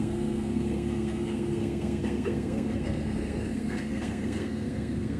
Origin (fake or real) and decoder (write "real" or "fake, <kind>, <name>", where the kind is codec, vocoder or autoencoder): fake, codec, SNAC